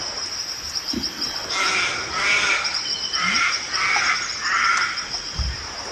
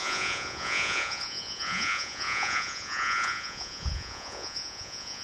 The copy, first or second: second